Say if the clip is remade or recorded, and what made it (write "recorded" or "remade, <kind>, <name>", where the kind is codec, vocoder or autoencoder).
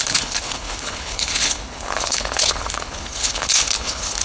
remade, codec, HILCodec